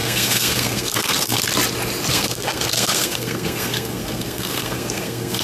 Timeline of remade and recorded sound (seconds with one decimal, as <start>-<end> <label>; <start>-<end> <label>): 0.0-1.4 remade; 1.4-2.1 recorded; 2.1-5.4 remade